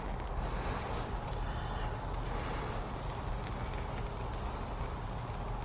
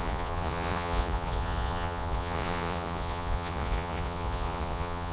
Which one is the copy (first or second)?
second